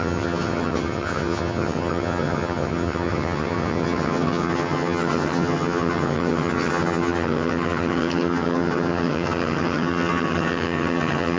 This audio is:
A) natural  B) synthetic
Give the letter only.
B